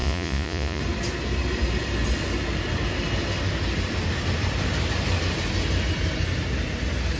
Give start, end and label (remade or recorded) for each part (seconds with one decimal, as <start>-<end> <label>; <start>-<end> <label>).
0.0-0.8 remade; 0.8-7.2 recorded